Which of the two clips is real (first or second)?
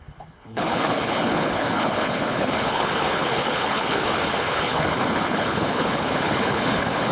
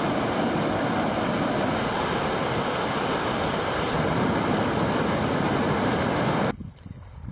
second